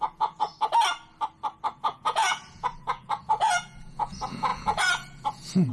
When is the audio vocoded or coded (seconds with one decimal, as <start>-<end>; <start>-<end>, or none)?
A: 0.0-0.5; 1.7-5.7